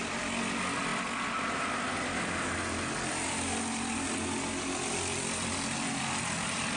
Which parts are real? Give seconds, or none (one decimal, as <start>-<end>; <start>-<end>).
0.0-6.8